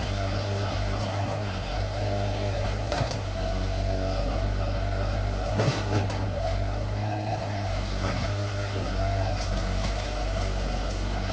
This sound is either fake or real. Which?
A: fake